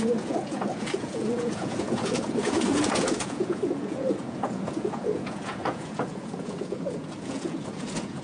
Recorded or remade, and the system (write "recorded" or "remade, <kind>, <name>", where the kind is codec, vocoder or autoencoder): remade, vocoder, Vocos